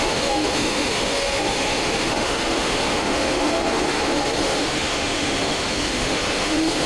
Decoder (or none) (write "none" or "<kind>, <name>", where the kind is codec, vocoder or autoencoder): autoencoder, DAC-VAE